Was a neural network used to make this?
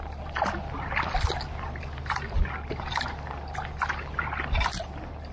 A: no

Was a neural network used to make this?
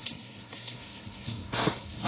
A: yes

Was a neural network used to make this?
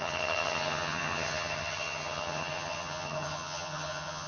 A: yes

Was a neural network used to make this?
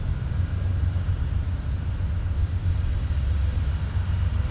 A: no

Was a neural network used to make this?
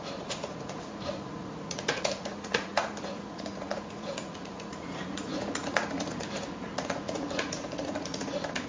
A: yes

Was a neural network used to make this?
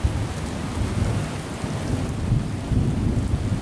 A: no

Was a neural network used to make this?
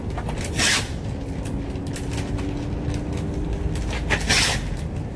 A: no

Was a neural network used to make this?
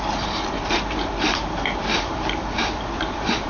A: yes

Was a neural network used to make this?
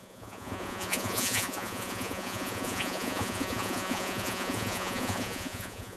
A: yes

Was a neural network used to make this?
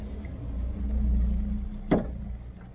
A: no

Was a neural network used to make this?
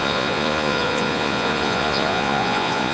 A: yes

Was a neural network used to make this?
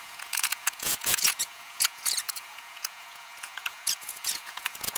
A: yes